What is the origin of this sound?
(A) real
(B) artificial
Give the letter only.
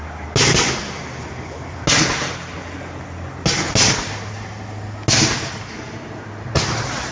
A